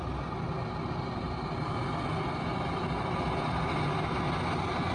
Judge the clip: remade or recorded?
recorded